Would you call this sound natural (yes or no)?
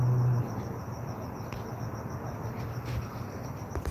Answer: yes